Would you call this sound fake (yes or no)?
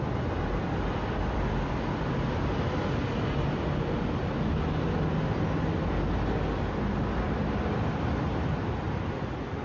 no